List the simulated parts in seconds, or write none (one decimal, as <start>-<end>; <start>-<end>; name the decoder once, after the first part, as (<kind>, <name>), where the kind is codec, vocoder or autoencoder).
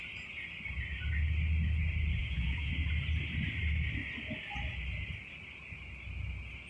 2.2-2.7 (autoencoder, DAC-VAE)